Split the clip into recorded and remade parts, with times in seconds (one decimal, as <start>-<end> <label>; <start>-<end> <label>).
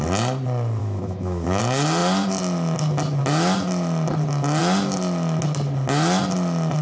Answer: 0.0-0.8 recorded; 0.8-1.6 remade; 1.6-6.8 recorded